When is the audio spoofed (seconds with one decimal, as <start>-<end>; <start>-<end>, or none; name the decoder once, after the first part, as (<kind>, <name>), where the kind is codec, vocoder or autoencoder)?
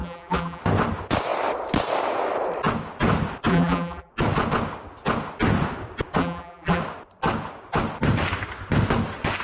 0.0-0.6 (vocoder, BigVGAN v2); 3.5-4.1; 6.2-6.8